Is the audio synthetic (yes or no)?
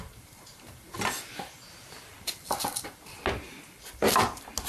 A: no